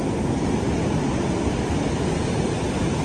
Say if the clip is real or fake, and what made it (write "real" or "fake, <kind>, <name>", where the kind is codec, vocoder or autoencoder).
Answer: real